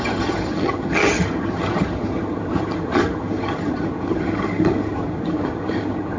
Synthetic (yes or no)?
yes